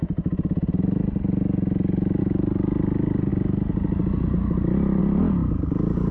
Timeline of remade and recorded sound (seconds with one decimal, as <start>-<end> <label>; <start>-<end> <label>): 0.0-6.1 recorded